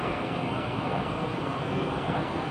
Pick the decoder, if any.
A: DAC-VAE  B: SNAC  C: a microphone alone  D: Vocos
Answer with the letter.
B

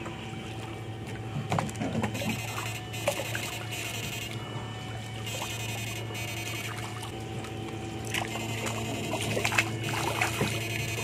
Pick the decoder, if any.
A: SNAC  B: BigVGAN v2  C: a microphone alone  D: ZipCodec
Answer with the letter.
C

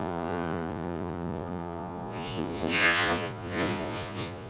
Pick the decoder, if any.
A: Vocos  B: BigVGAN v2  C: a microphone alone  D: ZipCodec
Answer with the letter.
A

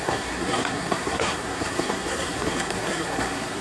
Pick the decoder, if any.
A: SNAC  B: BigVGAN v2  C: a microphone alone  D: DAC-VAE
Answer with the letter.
A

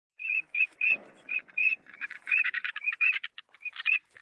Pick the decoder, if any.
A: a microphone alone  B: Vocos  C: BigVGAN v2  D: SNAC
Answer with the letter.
B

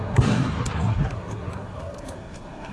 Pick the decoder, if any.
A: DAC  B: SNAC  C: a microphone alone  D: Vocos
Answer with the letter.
B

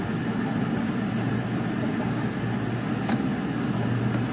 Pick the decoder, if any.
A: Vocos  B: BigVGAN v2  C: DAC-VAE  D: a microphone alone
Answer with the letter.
D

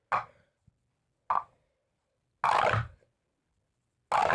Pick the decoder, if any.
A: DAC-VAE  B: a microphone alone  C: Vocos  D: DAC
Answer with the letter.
B